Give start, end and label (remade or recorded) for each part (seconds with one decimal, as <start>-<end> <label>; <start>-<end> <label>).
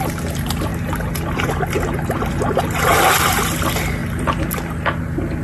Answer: 0.0-5.4 recorded